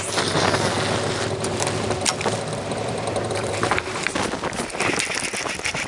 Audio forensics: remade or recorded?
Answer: recorded